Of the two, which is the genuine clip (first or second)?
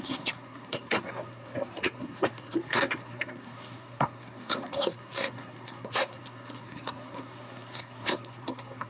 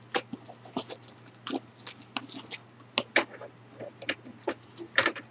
second